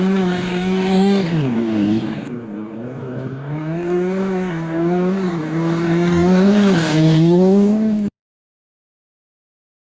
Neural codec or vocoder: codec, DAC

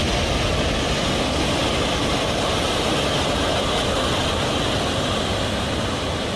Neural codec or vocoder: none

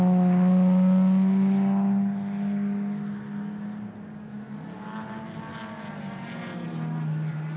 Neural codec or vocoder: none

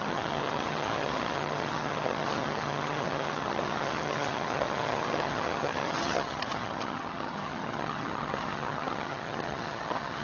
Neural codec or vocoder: vocoder, HiFi-GAN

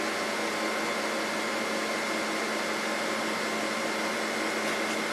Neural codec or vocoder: none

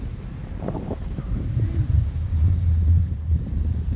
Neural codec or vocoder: vocoder, BigVGAN v2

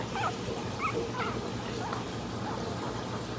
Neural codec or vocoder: none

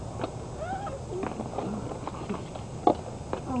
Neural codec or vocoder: none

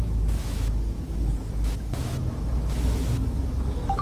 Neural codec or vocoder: autoencoder, DAC-VAE